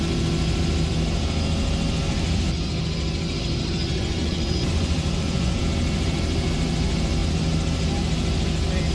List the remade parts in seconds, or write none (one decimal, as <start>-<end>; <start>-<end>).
3.9-5.6